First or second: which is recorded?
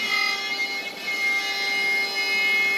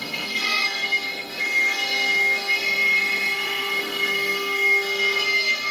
first